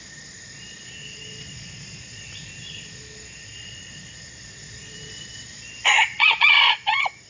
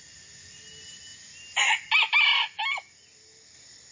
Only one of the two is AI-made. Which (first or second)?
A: first